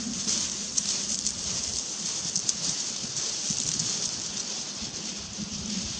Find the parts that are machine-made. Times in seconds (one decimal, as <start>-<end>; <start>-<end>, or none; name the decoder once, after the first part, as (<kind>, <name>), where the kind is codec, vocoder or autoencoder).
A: none